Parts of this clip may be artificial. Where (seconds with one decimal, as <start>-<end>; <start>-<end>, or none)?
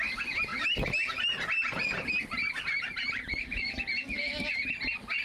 none